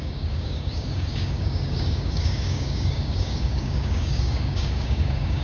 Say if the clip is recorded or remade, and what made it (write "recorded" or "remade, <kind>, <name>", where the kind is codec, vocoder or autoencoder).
remade, codec, DAC